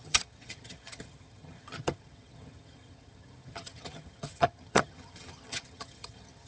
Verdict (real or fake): fake